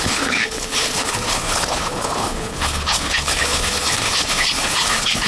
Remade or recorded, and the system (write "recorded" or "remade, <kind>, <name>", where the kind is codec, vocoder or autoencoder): remade, codec, HILCodec